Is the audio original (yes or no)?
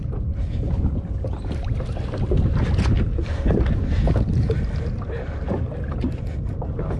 yes